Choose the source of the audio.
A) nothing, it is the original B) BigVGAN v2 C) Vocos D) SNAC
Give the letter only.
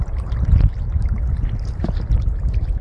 B